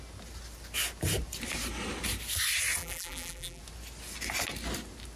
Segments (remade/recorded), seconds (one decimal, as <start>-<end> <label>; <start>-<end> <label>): 0.0-2.8 recorded; 2.8-3.6 remade; 3.6-5.2 recorded